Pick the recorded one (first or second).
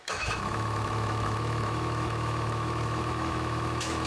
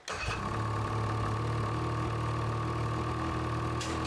second